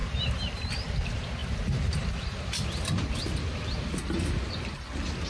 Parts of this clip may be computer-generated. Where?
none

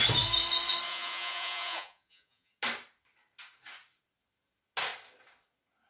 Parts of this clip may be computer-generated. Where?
0.9-2.5 (vocoder, Vocos)

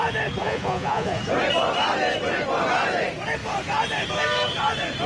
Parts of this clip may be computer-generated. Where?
0.4-1.2 (vocoder, Vocos)

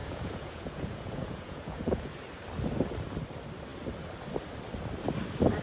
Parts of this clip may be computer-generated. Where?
0.0-2.2 (vocoder, Vocos)

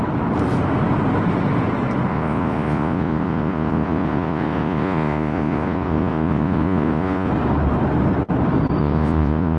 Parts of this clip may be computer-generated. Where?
2.1-7.3 (vocoder, Vocos); 8.8-9.6

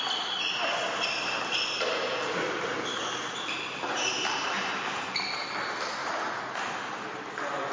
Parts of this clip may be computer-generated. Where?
6.0-6.5 (vocoder, Vocos)

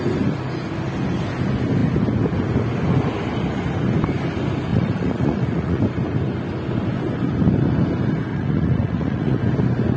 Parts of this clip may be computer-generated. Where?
4.7-5.8 (vocoder, Vocos); 8.3-9.4

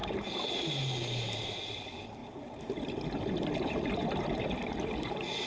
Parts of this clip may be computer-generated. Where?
none